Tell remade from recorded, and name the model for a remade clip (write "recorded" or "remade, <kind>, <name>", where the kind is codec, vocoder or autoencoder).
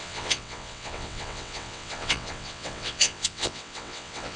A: remade, vocoder, WaveNeXt